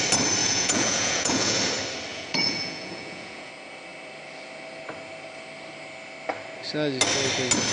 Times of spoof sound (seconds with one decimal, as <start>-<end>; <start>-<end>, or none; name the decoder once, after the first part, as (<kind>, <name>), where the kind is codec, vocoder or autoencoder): 0.4-1.6 (vocoder, Vocos); 2.1-3.5